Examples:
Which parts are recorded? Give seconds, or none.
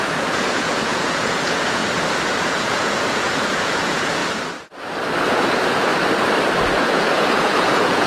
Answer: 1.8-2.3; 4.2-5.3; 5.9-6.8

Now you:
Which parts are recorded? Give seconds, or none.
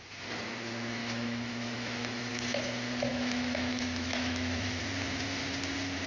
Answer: 0.0-1.0; 2.3-3.1; 4.8-6.1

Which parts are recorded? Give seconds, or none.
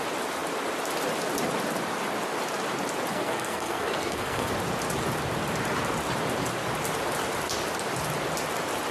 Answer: 0.0-3.1; 4.5-8.9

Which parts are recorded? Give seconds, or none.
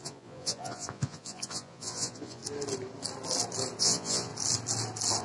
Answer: 2.4-3.8; 4.3-5.2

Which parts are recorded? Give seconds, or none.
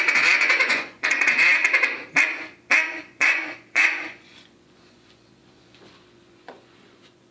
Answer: 1.6-2.9